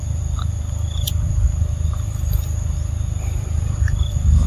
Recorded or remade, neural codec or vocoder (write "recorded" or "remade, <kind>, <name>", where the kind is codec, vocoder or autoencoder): recorded